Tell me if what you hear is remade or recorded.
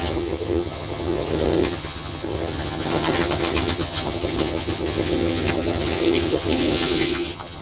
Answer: remade